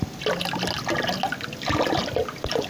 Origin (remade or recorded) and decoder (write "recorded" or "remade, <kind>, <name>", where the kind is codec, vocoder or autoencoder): recorded